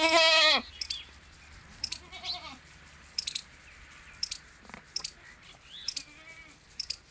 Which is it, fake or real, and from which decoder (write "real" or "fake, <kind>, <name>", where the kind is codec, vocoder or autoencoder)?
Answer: real